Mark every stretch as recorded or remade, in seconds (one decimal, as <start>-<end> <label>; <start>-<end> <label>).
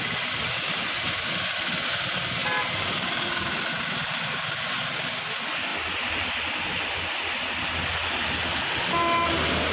0.0-2.4 recorded; 2.4-4.6 remade; 4.6-9.7 recorded